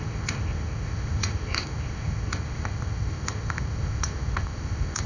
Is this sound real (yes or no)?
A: no